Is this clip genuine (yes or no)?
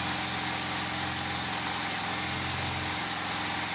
yes